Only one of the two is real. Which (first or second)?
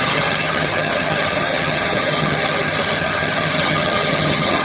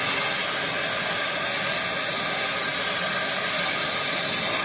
second